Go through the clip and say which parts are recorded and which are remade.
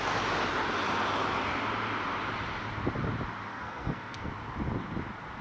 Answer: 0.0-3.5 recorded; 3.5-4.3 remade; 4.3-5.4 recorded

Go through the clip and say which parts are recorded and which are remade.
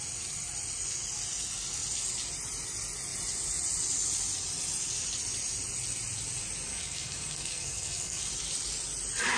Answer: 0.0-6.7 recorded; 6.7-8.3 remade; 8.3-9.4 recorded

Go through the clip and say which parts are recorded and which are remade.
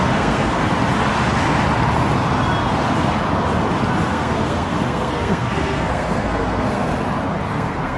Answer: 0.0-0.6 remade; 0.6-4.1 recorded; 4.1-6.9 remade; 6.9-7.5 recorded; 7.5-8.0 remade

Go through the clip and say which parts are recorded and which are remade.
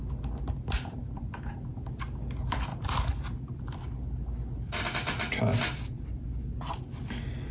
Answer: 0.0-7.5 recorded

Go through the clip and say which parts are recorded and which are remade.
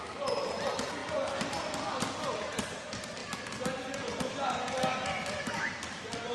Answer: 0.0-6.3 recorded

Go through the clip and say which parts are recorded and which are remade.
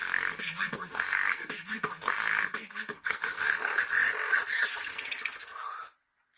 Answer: 0.0-3.8 remade; 3.8-4.9 recorded; 4.9-5.7 remade; 5.7-6.4 recorded